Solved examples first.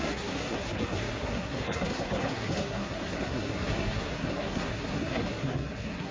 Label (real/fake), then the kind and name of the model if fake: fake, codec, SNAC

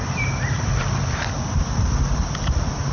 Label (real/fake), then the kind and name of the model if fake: real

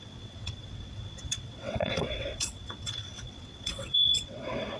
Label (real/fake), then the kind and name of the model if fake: fake, vocoder, WaveNeXt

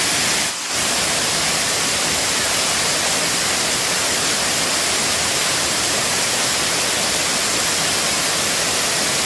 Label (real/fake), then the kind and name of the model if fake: real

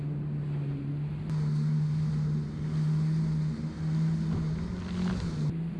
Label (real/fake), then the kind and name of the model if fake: real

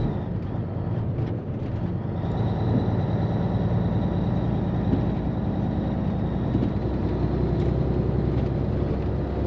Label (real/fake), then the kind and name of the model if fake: real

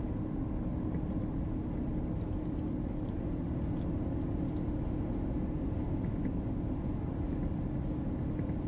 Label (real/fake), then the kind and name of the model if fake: real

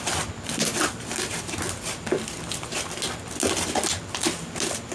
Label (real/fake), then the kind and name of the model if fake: real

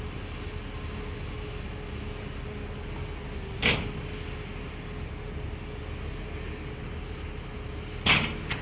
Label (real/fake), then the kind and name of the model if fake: real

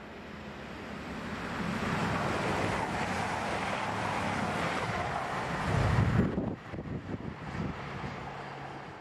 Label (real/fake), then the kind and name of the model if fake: real